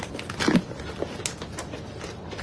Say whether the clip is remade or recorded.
recorded